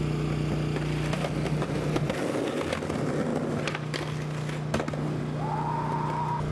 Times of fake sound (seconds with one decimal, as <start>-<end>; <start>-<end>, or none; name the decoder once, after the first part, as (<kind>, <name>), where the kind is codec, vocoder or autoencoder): none